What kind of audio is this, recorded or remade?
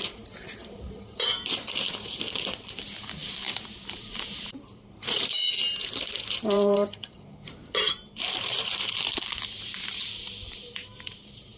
remade